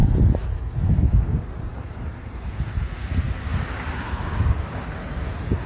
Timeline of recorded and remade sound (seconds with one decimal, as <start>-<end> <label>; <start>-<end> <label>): 0.0-5.7 recorded